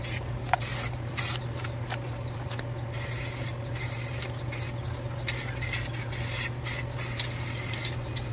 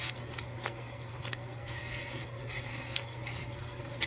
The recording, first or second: first